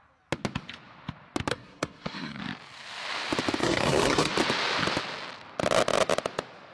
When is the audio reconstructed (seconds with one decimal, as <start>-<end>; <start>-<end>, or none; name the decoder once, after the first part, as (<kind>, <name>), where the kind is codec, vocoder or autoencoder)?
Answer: 1.5-2.4 (codec, SNAC); 3.6-4.3